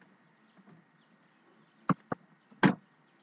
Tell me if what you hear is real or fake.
real